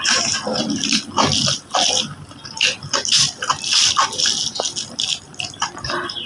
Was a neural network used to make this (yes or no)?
no